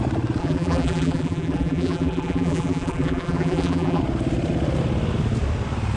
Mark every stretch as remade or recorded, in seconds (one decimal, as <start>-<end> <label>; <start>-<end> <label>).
0.0-0.4 recorded; 0.4-4.0 remade; 4.0-6.0 recorded